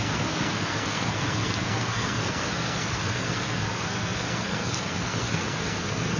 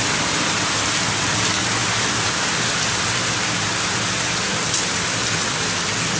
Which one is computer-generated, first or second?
first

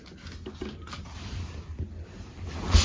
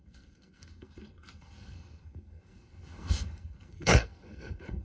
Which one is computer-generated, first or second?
second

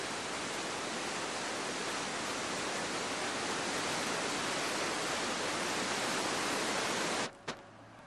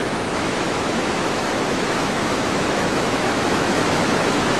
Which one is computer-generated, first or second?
second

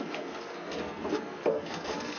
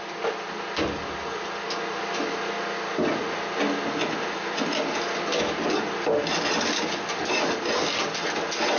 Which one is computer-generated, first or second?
first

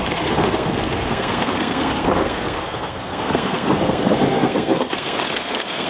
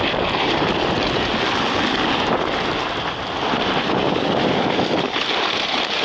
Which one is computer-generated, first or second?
first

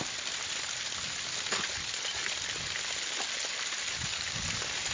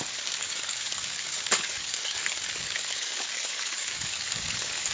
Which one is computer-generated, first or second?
second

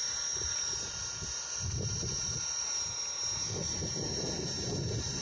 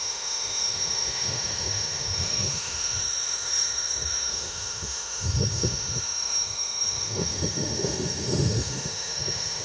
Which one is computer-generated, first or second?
second